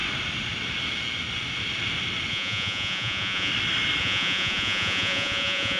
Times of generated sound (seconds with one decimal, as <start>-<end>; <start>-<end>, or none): 2.3-3.5; 4.0-5.8